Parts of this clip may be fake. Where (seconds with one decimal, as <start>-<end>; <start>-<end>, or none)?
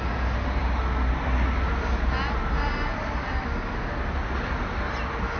none